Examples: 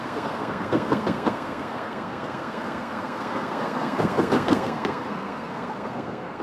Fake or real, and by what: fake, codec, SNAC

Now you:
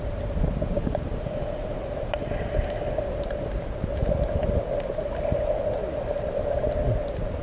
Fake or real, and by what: real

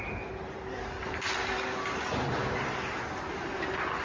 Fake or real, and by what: real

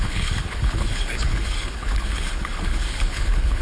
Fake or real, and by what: fake, codec, HILCodec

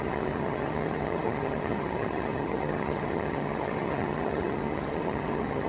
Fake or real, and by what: fake, vocoder, HiFi-GAN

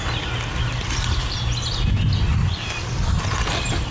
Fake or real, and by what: real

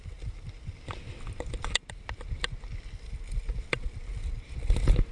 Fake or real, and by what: real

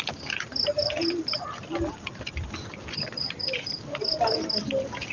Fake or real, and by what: real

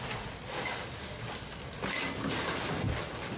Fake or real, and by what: real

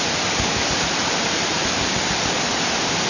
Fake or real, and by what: real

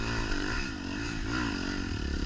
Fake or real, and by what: fake, vocoder, BigVGAN v2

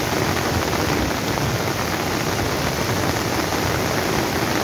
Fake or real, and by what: real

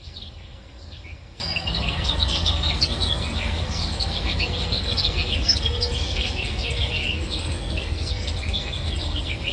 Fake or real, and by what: fake, codec, SNAC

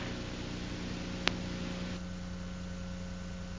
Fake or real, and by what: real